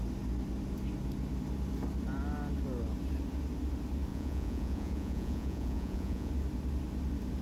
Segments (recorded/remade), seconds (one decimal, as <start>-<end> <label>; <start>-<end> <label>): 0.0-4.1 recorded; 4.1-6.3 remade; 6.3-7.4 recorded